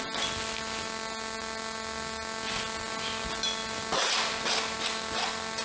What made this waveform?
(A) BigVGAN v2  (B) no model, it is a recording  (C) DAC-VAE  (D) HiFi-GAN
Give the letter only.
B